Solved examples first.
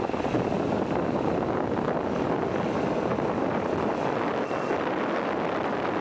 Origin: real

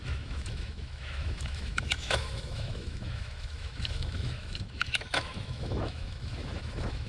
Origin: fake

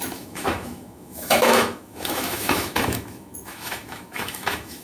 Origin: fake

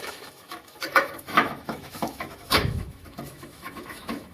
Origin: fake